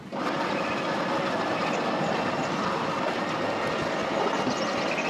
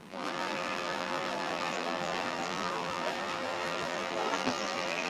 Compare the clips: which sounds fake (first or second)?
second